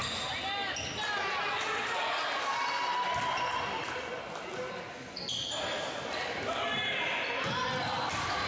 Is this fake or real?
real